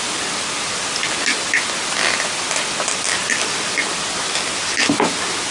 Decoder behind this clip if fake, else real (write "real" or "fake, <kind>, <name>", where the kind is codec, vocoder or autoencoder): real